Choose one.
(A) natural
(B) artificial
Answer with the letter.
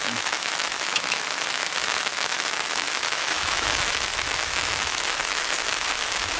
B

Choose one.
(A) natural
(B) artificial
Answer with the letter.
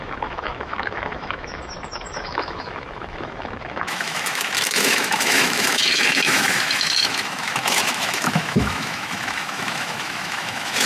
B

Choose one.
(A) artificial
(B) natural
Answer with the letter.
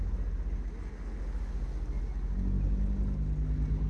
B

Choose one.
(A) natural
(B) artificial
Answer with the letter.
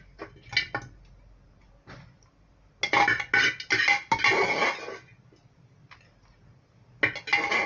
A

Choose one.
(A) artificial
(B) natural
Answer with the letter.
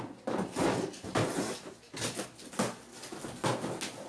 B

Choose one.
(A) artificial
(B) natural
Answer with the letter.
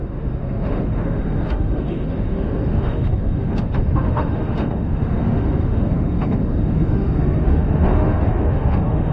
A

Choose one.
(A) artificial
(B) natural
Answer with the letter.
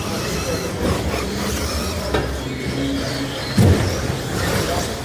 B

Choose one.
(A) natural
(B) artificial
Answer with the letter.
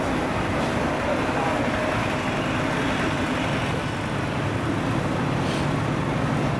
A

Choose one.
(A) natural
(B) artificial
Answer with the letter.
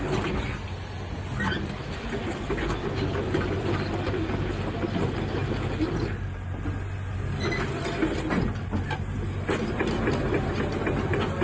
A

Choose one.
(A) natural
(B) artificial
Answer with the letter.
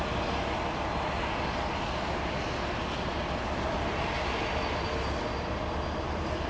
A